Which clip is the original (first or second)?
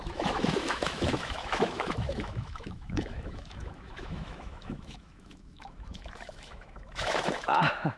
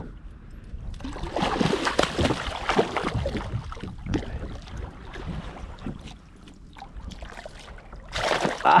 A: second